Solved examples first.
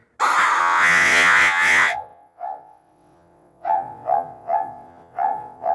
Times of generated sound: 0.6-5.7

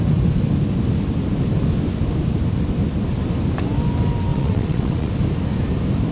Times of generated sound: 4.3-5.1

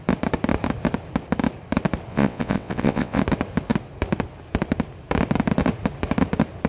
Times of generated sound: 2.1-3.2

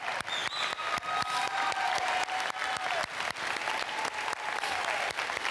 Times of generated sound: none

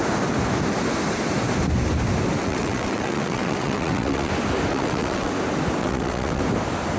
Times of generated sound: 2.4-4.3; 4.7-5.3; 5.8-6.4

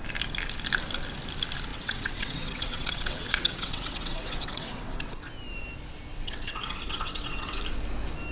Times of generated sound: 1.7-5.3; 6.1-7.6